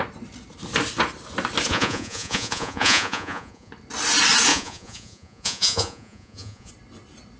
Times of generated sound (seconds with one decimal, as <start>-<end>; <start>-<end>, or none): 1.7-3.7; 4.5-6.7